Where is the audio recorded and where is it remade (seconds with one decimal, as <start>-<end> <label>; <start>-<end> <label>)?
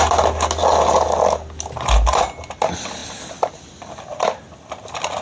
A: 0.0-5.2 recorded